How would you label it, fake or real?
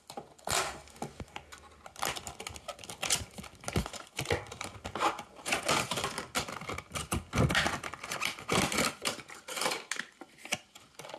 real